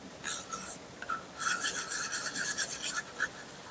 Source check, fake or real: fake